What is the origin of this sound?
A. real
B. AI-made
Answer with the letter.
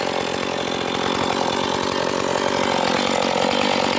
A